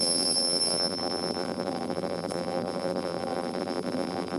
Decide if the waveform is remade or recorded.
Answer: remade